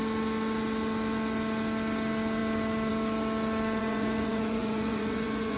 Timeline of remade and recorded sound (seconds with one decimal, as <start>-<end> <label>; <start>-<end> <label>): 0.0-3.8 recorded; 3.8-5.6 remade